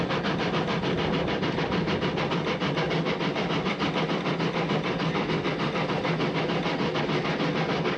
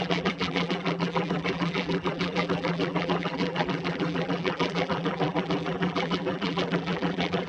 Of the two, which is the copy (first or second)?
second